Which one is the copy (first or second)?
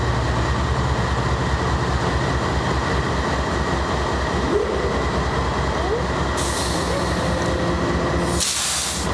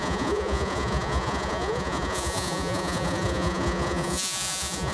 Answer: second